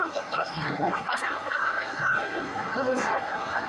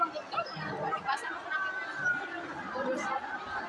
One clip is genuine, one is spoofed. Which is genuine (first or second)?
second